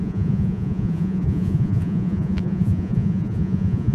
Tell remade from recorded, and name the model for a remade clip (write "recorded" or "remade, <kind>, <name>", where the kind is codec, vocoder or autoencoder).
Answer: remade, vocoder, Vocos